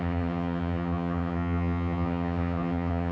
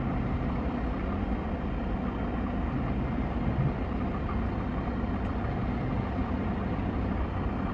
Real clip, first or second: second